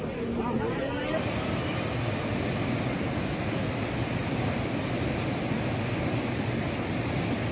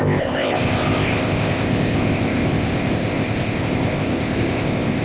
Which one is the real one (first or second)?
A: first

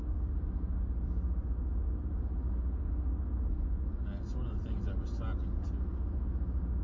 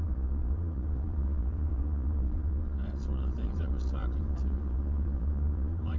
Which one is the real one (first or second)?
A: first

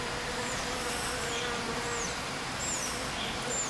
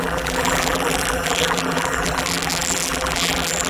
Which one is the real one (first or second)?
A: first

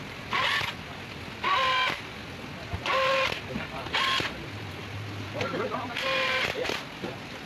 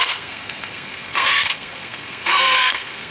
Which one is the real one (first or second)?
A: first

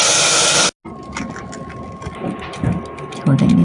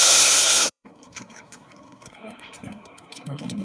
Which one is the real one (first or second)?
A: first